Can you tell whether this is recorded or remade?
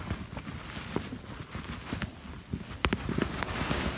recorded